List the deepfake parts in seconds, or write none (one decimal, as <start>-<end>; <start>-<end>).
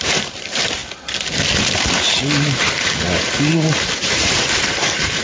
0.0-0.8; 1.6-2.6; 3.5-5.2